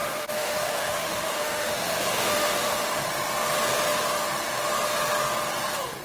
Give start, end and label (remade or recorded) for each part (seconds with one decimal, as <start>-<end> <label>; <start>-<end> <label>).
0.0-3.1 remade; 3.1-6.0 recorded